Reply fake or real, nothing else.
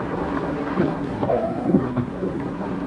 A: fake